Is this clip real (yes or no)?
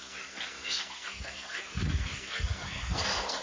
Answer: no